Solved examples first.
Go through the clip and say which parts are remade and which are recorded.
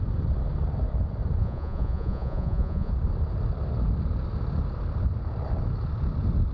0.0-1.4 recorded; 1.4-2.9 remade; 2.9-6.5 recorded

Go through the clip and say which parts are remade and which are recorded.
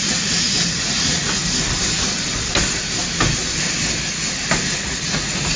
0.0-1.4 remade; 1.4-4.8 recorded; 4.8-5.6 remade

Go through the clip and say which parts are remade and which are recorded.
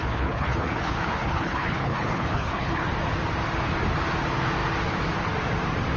0.0-2.9 remade; 2.9-6.0 recorded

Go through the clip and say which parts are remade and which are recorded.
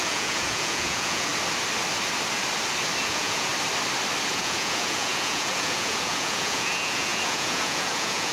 0.0-1.3 remade; 1.3-3.0 recorded; 3.0-3.5 remade; 3.5-4.3 recorded; 4.3-8.3 remade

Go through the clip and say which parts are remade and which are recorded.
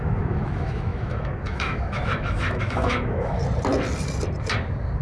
0.0-3.4 remade; 3.4-5.0 recorded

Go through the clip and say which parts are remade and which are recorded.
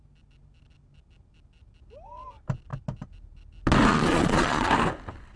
0.0-3.9 recorded; 3.9-4.7 remade; 4.7-5.4 recorded